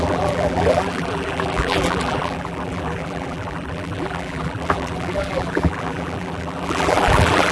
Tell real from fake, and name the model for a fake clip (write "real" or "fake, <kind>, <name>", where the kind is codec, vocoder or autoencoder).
fake, vocoder, BigVGAN v2